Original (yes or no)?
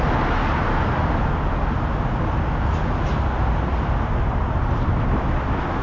yes